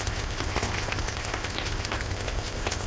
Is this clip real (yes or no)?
no